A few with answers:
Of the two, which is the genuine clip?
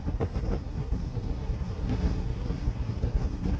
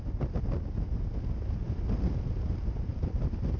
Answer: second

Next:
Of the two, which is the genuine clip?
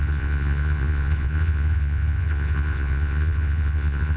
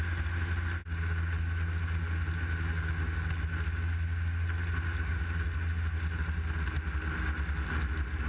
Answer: second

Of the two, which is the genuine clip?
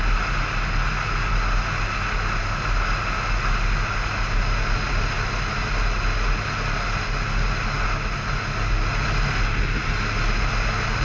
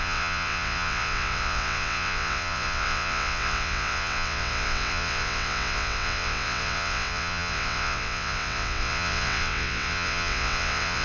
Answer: first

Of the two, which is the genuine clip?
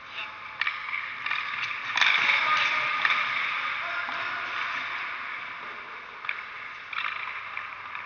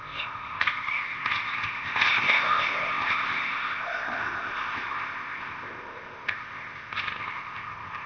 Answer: first